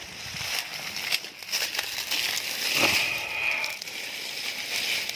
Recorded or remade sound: recorded